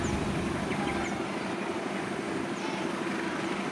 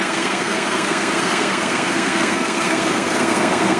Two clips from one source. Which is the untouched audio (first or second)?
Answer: first